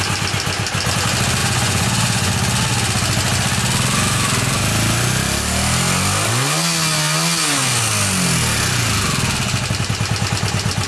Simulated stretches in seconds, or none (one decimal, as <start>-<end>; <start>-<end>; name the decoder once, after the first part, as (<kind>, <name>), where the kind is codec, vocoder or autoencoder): 1.4-2.3 (vocoder, Vocos)